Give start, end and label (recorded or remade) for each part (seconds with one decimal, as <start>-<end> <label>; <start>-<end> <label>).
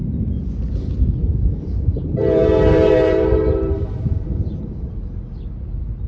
0.0-1.2 recorded; 1.2-4.9 remade; 4.9-6.1 recorded